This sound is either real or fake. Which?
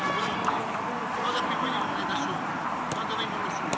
real